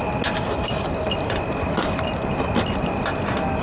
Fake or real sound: real